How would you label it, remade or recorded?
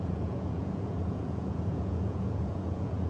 remade